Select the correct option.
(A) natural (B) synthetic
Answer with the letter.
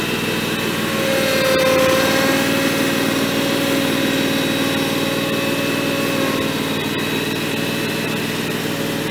A